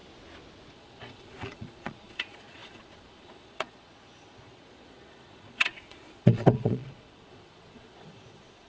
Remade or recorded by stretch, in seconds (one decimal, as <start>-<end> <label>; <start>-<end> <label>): 0.0-0.7 recorded; 0.7-8.7 remade